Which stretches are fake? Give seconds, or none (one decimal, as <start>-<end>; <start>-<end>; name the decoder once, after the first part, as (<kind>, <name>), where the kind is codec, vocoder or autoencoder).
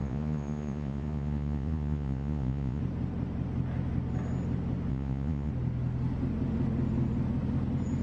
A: 0.0-2.8 (vocoder, Vocos); 4.9-5.5